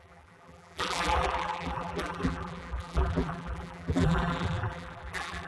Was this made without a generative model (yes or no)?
no